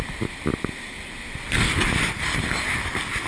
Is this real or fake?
real